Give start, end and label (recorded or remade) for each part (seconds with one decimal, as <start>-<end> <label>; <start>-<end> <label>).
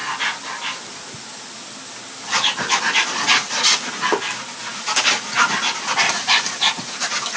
0.0-7.4 recorded